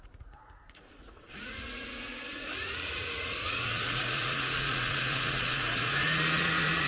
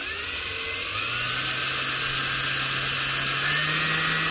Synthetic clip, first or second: first